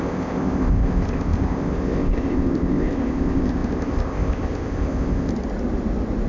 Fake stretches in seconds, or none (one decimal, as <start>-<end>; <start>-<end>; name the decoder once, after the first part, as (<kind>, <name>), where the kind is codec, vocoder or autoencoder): 0.0-5.3 (codec, ZipCodec)